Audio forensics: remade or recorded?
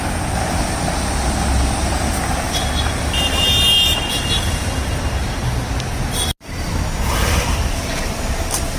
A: recorded